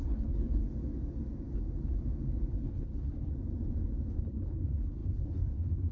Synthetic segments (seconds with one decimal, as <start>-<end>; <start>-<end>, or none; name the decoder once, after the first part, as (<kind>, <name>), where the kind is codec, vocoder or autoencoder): 0.0-0.6 (codec, HILCodec); 2.5-3.3; 4.1-5.9